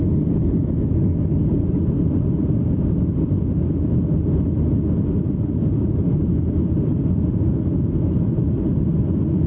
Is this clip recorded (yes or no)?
yes